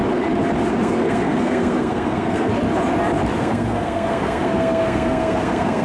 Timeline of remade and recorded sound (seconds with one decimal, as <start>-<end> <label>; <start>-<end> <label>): 0.0-0.7 recorded; 0.7-2.5 remade; 2.5-3.4 recorded; 3.4-5.8 remade